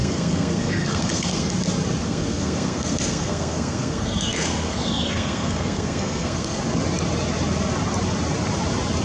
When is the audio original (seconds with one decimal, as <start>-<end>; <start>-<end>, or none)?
1.5-2.0; 6.6-9.0